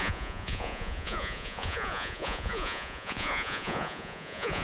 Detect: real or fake fake